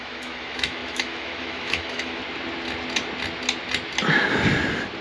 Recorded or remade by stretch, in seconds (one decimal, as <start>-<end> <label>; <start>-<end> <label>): 0.0-2.2 remade; 2.2-5.0 recorded